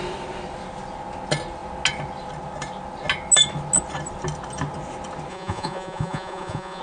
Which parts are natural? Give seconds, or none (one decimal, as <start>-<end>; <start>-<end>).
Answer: 0.0-5.3